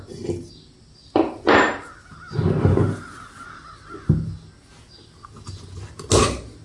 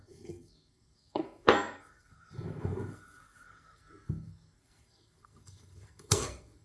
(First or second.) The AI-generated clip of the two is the second